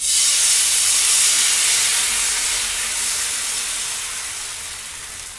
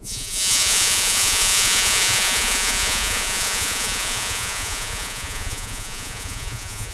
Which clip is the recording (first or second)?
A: first